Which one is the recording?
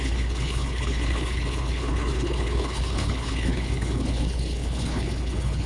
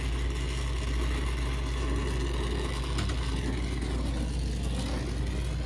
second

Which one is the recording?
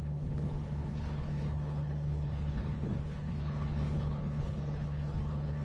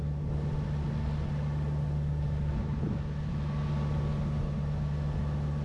second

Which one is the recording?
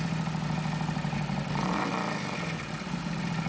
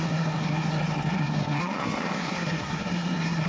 first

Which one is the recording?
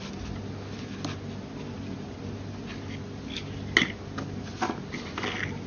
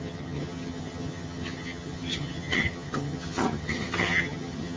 first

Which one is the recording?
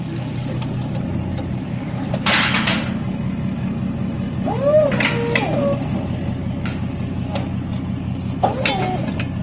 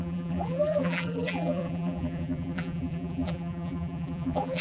first